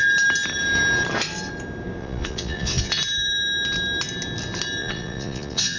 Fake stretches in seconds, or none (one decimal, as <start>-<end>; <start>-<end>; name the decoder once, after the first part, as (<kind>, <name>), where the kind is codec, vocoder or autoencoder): 2.0-3.0 (vocoder, Vocos); 4.8-5.8